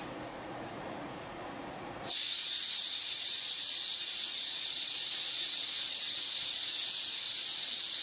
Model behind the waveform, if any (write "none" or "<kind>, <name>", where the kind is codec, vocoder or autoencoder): vocoder, Vocos